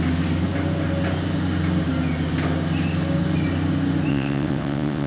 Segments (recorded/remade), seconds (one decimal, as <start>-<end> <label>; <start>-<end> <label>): 0.0-4.1 recorded; 4.1-5.1 remade